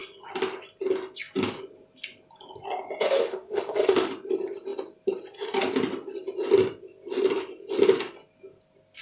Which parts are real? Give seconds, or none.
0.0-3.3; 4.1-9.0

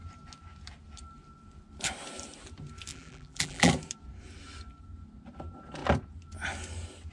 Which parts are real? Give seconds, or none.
0.0-2.9; 3.7-7.1

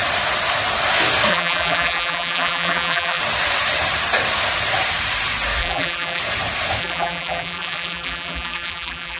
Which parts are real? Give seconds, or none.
0.0-1.3; 3.2-5.6; 6.2-6.8

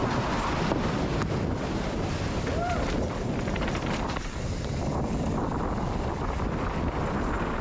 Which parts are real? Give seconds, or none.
0.0-1.1; 5.7-7.6

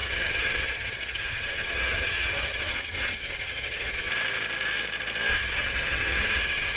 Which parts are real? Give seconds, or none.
4.1-5.3